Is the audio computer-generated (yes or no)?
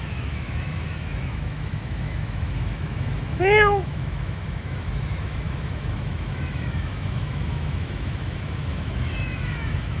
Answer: yes